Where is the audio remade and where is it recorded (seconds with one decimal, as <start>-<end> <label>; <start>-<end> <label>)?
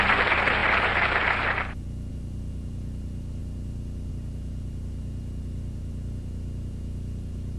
0.0-3.4 remade; 3.4-4.1 recorded; 4.1-7.6 remade